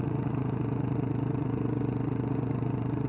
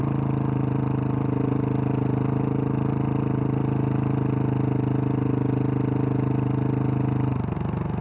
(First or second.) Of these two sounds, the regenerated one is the first